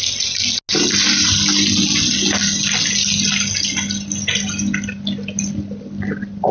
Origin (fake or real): real